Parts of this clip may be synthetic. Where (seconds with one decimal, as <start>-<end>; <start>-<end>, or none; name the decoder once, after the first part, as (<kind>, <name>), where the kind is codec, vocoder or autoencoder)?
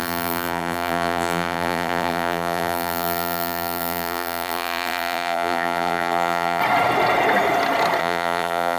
0.0-6.6 (vocoder, BigVGAN v2); 8.0-8.8